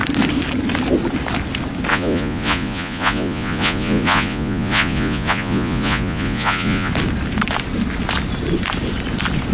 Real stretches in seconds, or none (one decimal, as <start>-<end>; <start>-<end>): 0.0-1.9; 6.9-9.5